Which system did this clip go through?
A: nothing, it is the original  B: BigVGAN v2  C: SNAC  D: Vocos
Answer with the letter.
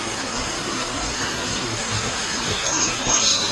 C